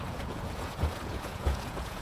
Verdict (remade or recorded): remade